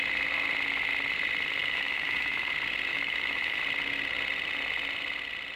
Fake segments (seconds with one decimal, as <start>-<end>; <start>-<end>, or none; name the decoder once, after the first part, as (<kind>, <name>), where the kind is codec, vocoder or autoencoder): 1.6-2.5 (autoencoder, DAC-VAE); 2.9-3.6